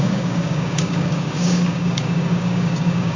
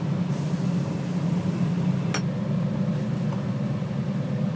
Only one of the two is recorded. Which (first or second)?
second